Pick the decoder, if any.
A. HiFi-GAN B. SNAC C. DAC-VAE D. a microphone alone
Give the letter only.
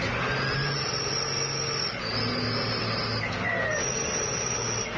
D